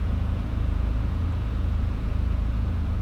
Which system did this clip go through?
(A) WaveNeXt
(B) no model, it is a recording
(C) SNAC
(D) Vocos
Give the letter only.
D